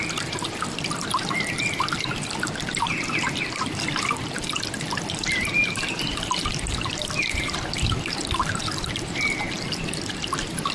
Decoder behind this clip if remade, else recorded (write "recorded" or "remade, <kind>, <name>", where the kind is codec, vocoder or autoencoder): remade, vocoder, BigVGAN v2